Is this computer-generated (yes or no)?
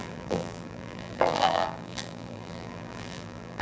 yes